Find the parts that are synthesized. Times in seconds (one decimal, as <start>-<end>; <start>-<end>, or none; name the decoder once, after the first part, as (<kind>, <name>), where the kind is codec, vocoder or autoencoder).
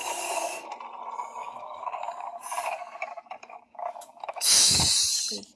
0.0-0.7 (codec, DAC); 1.4-4.8